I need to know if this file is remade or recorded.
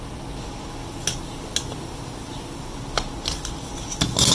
recorded